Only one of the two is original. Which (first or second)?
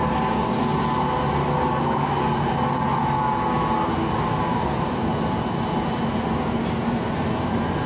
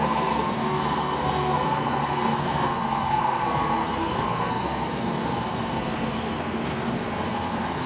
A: first